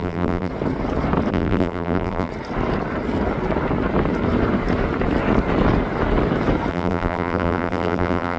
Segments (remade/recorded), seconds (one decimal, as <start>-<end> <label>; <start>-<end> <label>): 0.0-0.5 remade; 0.5-1.3 recorded; 1.3-2.3 remade; 2.3-6.7 recorded; 6.7-8.4 remade